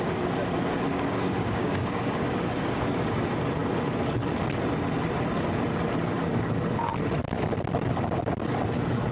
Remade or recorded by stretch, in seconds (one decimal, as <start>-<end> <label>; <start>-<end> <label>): 0.0-0.9 recorded; 0.9-3.2 remade; 3.2-9.1 recorded